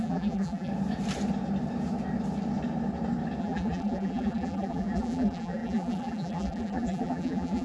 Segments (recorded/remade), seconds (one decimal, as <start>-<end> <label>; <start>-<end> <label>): 0.0-0.7 remade; 0.7-3.4 recorded; 3.4-7.6 remade